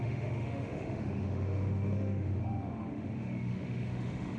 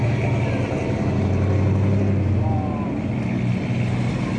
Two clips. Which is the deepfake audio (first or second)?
first